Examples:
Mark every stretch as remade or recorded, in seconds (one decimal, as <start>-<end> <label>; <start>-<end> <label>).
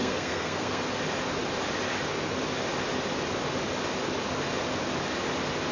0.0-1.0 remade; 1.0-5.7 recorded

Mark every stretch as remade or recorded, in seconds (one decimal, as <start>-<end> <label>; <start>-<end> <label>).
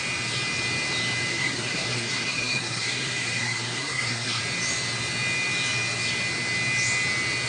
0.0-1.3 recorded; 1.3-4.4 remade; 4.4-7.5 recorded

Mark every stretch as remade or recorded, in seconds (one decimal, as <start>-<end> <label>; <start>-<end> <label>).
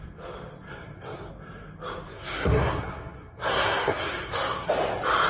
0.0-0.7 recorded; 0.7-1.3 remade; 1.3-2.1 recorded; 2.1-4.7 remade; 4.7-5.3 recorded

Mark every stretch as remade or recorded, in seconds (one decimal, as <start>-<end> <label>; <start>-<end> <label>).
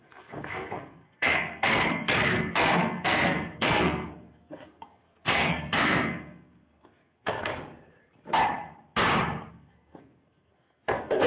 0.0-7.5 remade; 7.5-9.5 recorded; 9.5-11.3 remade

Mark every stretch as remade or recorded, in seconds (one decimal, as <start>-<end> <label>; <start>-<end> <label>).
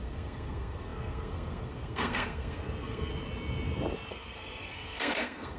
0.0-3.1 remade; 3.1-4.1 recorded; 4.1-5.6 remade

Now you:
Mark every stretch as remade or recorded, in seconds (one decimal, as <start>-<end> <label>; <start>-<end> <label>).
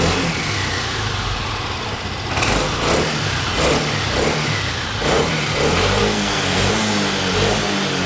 0.0-6.0 recorded; 6.0-6.7 remade; 6.7-8.1 recorded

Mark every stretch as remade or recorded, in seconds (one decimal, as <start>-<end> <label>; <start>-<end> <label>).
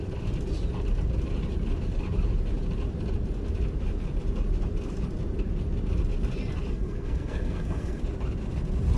0.0-6.7 recorded; 6.7-8.0 remade; 8.0-9.0 recorded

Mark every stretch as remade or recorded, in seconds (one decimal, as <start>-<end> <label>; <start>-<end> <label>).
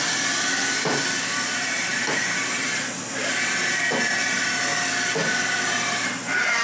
0.0-6.6 recorded